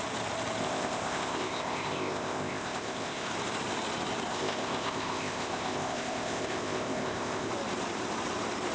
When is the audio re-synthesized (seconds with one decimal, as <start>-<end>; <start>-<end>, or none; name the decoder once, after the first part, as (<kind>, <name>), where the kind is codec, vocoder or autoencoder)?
0.6-3.3 (codec, ZipCodec); 4.3-7.5